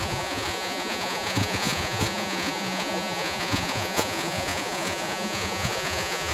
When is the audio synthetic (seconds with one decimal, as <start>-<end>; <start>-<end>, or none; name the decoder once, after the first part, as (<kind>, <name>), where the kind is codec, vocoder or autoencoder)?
0.0-6.3 (vocoder, Vocos)